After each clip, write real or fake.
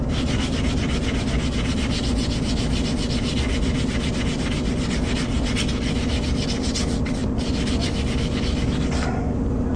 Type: real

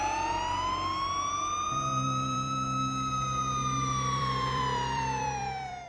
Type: fake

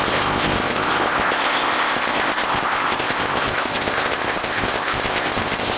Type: fake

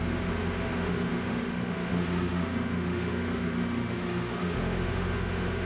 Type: fake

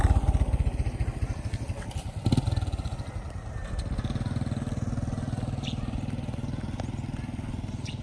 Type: real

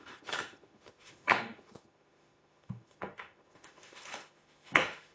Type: fake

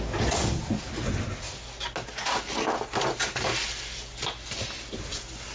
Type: real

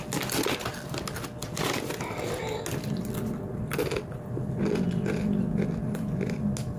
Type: real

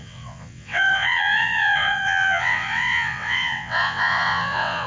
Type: fake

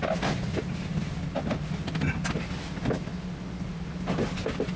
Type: real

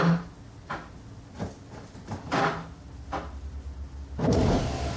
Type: real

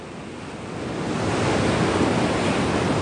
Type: real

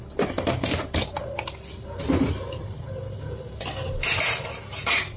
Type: real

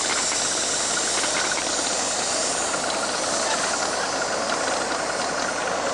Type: real